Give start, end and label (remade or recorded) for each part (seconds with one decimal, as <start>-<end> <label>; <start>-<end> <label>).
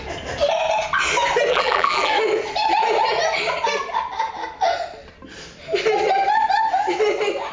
0.0-1.5 recorded; 1.5-2.1 remade; 2.1-7.5 recorded